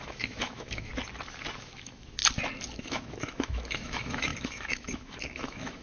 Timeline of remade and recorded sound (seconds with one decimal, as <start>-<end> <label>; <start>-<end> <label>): 0.0-0.9 remade; 0.9-1.6 recorded; 1.6-2.2 remade; 2.2-2.8 recorded; 2.8-5.8 remade